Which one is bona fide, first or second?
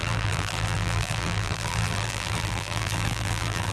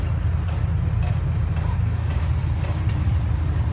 second